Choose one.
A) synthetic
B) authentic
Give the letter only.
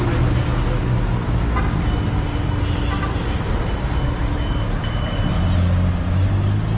B